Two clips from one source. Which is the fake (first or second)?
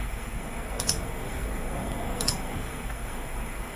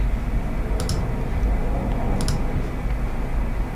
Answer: first